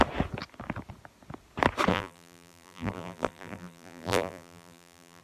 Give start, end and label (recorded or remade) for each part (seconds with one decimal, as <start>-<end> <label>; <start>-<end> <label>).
0.0-1.9 recorded; 1.9-5.2 remade